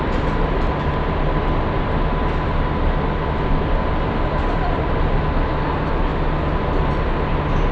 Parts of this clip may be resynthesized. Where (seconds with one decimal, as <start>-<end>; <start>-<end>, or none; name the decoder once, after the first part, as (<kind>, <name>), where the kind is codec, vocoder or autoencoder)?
none